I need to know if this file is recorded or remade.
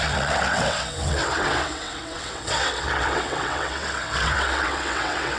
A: remade